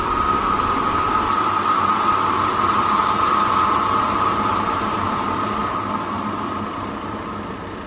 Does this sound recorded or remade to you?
recorded